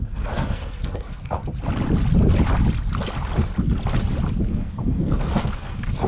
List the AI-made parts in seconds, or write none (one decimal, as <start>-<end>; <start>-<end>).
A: 0.0-1.4; 4.5-6.1